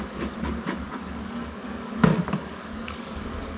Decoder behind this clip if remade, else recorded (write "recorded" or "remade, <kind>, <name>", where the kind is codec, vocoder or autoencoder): remade, codec, DAC